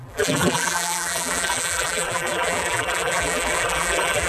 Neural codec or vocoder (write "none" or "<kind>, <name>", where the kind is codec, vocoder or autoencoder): vocoder, BigVGAN v2